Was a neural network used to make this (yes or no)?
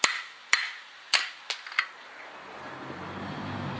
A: no